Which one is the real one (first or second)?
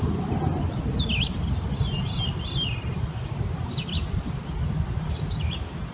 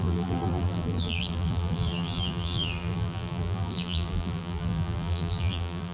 first